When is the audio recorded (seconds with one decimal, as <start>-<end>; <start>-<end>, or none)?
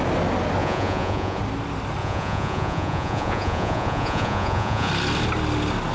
0.0-0.6; 1.4-2.0; 4.9-5.9